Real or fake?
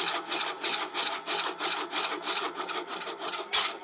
real